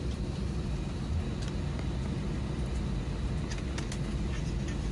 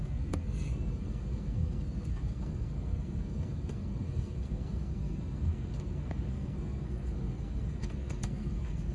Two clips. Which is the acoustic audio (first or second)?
first